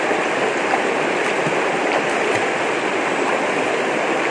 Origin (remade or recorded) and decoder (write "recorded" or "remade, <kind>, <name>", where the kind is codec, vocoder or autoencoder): recorded